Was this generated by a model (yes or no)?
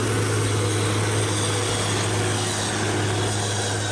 no